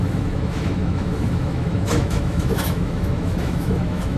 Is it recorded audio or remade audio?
remade